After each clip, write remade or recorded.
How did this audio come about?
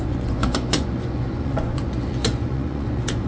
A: remade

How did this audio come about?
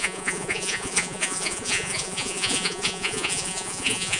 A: remade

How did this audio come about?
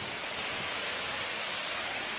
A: recorded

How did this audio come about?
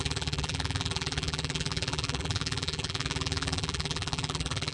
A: remade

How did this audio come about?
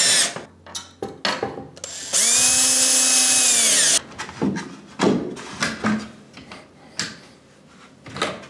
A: recorded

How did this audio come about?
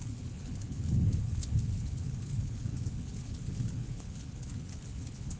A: remade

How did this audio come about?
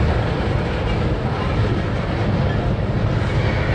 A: recorded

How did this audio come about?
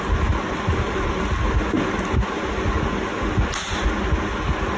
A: recorded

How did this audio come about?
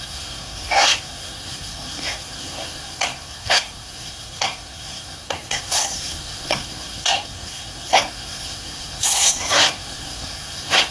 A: remade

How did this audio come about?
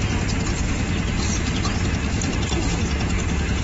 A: recorded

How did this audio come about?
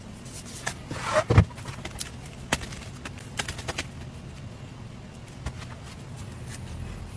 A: recorded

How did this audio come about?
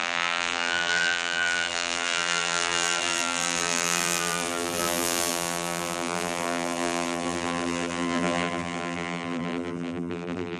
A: remade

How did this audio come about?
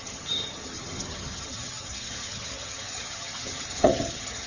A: remade